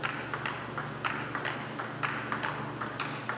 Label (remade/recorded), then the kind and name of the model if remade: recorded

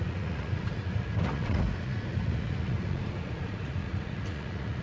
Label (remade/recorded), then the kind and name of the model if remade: remade, vocoder, Vocos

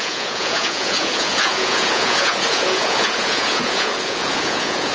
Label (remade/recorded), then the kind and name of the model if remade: remade, vocoder, Vocos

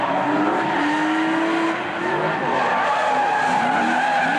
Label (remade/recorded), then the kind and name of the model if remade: recorded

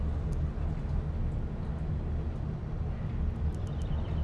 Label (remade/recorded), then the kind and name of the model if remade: recorded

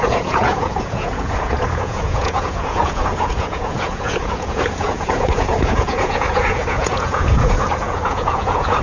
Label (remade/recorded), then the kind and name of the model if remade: remade, vocoder, Vocos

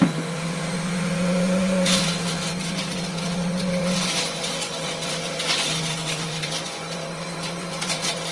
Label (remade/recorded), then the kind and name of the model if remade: remade, vocoder, Vocos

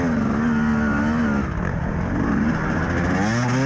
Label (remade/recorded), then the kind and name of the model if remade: recorded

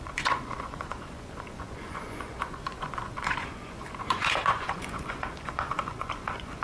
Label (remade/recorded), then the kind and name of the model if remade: remade, vocoder, Vocos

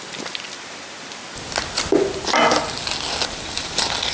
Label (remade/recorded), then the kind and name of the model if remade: recorded